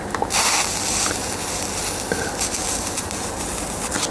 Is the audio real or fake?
real